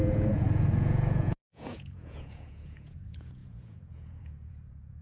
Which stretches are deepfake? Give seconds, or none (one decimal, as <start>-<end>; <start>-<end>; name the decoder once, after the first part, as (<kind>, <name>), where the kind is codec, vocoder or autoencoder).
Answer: 0.0-5.0 (vocoder, Vocos)